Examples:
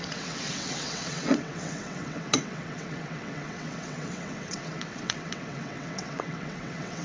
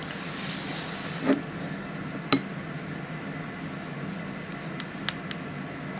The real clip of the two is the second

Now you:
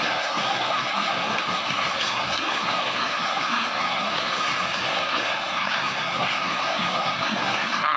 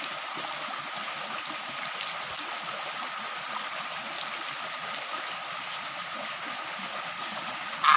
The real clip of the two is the second